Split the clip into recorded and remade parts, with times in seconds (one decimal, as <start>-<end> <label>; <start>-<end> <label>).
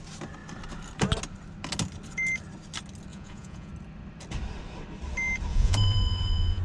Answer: 0.0-3.1 recorded; 3.1-3.7 remade; 3.7-5.5 recorded; 5.5-6.6 remade